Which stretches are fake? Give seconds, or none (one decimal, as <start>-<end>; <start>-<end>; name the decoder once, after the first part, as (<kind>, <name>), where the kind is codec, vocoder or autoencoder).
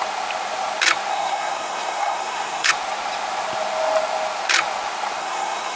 1.1-2.7 (codec, SNAC); 5.2-5.8